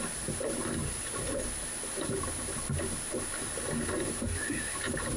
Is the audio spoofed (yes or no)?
no